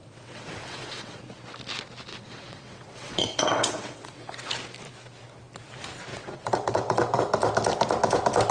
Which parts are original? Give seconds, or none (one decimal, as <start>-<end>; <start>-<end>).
1.2-2.1; 4.3-6.1; 7.2-8.5